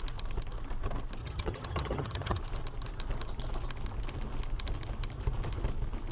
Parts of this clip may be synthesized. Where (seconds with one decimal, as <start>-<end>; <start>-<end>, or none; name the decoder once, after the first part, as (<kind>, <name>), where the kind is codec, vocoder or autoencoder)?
1.2-2.4 (vocoder, HiFi-GAN)